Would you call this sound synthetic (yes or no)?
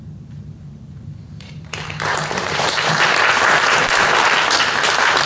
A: yes